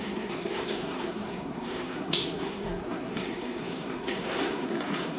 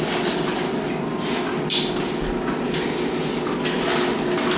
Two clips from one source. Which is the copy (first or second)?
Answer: first